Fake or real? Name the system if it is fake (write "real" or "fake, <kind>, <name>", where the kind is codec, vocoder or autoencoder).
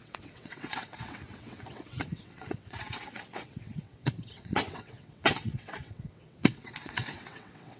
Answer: fake, vocoder, WaveNeXt